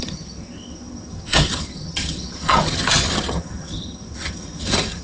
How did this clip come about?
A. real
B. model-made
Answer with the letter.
B